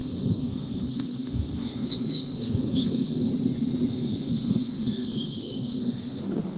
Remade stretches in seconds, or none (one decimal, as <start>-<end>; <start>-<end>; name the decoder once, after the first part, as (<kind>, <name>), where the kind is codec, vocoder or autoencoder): 0.0-3.3 (codec, SNAC); 3.9-6.6